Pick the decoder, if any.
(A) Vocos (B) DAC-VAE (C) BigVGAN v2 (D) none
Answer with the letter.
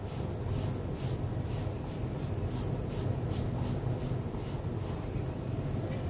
D